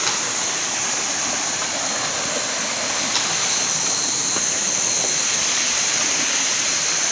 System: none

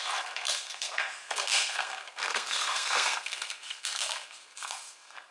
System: codec, SNAC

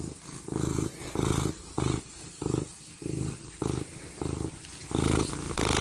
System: none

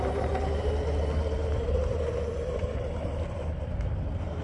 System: none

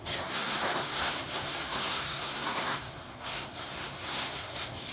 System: codec, SNAC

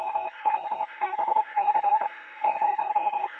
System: codec, SNAC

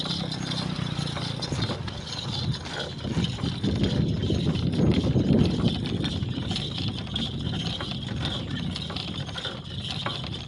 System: none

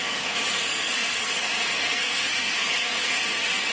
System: codec, SNAC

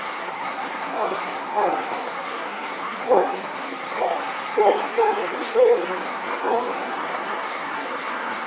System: codec, SNAC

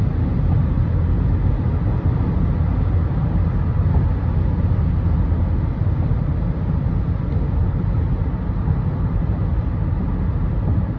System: none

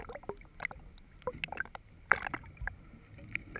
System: none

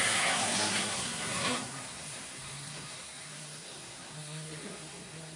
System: codec, SNAC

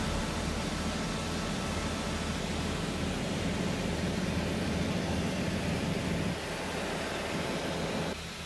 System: none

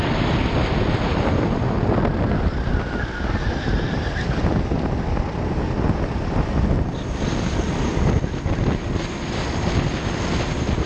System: none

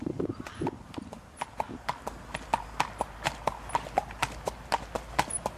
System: none